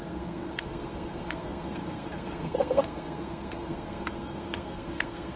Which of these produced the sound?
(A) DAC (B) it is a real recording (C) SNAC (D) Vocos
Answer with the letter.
C